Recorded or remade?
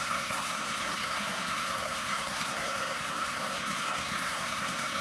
remade